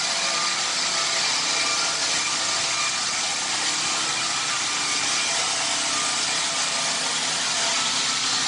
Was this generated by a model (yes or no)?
no